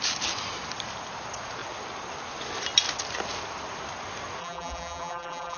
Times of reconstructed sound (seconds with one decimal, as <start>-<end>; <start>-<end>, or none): 4.4-5.6